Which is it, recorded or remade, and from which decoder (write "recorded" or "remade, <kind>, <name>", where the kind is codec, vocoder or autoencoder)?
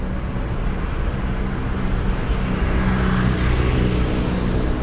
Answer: recorded